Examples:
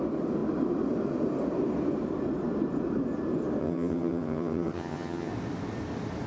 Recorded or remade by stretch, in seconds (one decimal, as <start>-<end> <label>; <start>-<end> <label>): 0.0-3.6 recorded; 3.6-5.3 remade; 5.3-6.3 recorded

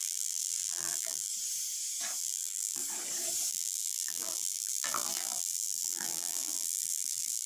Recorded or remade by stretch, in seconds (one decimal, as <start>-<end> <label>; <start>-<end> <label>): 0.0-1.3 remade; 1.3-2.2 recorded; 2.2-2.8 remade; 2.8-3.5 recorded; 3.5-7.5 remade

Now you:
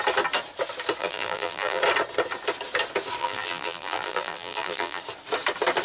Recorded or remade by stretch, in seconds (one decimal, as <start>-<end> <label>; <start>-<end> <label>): 0.0-1.0 recorded; 1.0-1.8 remade; 1.8-3.2 recorded; 3.2-5.0 remade; 5.0-5.8 recorded

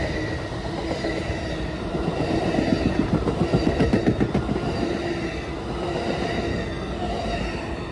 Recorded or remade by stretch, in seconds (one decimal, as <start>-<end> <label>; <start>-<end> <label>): 0.0-6.5 recorded; 6.5-7.1 remade; 7.1-7.9 recorded